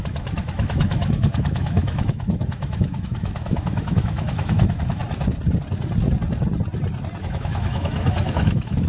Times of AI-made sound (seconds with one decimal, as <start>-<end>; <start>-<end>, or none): 0.0-5.0; 7.2-8.9